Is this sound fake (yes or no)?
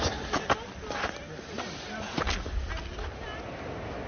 no